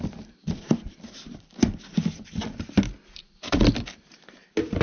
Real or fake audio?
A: real